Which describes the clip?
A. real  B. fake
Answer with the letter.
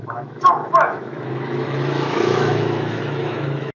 B